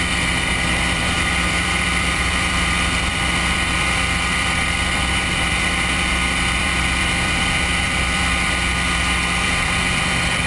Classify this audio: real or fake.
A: fake